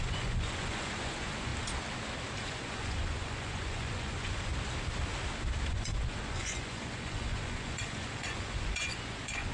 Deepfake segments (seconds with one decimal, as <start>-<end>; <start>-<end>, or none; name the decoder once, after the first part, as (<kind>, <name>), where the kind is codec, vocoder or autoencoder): 0.0-1.5 (vocoder, Vocos); 2.4-4.5; 5.7-9.5